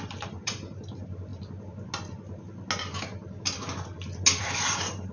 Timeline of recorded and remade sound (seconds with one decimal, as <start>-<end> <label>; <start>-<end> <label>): 0.0-1.3 remade; 1.3-4.4 recorded; 4.4-5.1 remade